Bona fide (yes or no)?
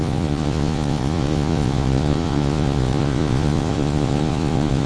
no